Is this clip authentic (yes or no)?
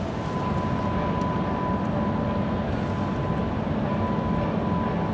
yes